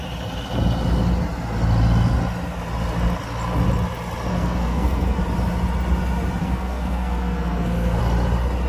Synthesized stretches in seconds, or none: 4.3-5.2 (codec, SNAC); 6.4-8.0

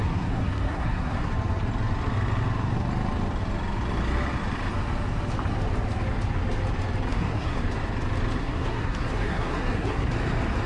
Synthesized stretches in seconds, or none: 0.0-1.3 (codec, SNAC); 7.1-7.6; 8.4-10.1

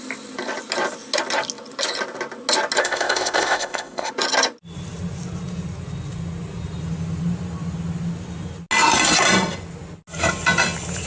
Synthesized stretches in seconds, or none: 2.8-4.1 (codec, ZipCodec)